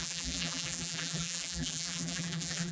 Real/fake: fake